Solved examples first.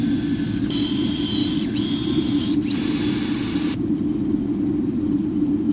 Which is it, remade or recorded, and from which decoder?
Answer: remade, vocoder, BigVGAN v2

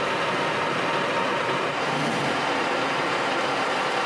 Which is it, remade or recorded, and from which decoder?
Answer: remade, vocoder, BigVGAN v2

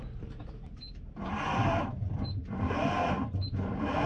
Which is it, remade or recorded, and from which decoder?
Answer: remade, vocoder, BigVGAN v2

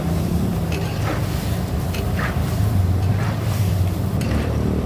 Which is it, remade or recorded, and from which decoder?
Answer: remade, vocoder, BigVGAN v2